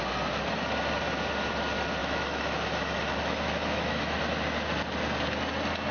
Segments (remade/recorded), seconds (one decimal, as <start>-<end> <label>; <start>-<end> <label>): 0.0-2.0 recorded; 2.0-4.2 remade; 4.2-5.9 recorded